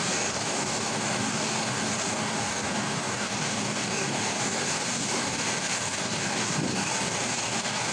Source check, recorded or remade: remade